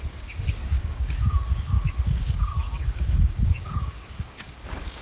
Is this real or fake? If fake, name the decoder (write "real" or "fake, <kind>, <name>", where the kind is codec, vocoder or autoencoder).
fake, codec, DAC